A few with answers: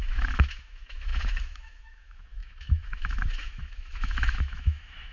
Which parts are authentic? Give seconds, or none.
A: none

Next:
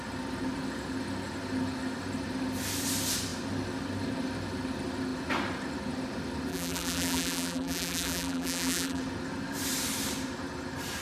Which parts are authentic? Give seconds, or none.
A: 0.0-6.5; 9.0-11.0

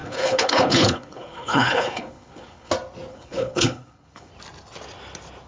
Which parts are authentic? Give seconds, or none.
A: 2.7-3.1; 4.3-5.5

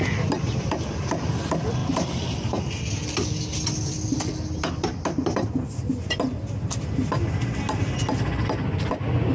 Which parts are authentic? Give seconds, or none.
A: 0.0-9.3

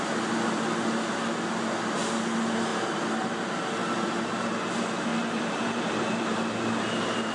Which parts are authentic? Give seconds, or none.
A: 0.0-2.7; 3.3-5.1; 6.6-7.3

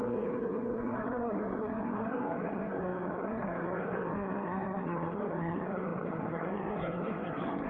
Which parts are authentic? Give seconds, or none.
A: none

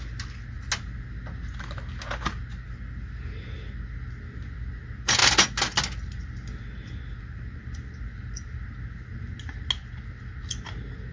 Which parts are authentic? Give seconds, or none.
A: 0.0-11.1

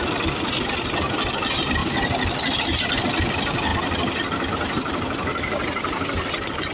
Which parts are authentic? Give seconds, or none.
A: 0.0-6.7